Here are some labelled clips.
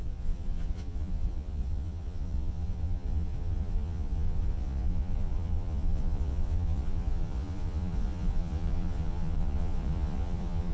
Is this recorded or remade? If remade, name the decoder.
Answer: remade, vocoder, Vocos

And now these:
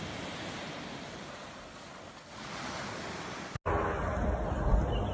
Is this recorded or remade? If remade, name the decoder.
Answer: recorded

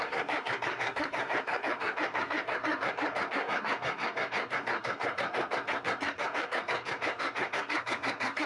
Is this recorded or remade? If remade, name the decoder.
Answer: remade, codec, SNAC